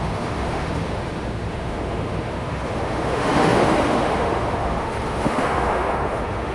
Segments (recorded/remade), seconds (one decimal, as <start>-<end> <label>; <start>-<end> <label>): 0.0-6.5 remade